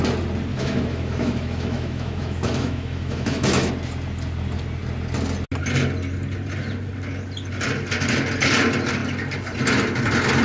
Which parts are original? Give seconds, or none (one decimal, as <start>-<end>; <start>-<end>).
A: 0.0-0.5; 3.7-10.4